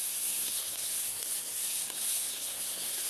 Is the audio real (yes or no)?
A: no